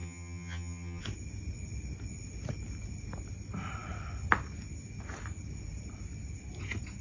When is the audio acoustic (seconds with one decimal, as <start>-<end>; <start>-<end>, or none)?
1.0-7.0